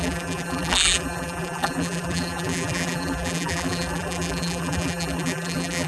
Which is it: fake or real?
fake